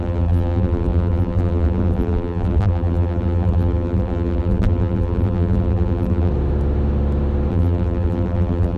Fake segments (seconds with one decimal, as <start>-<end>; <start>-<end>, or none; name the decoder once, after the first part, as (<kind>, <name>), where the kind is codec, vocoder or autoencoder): 0.0-6.3 (vocoder, BigVGAN v2); 7.5-8.8